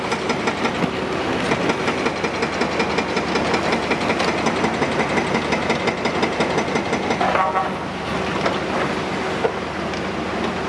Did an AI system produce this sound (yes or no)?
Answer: no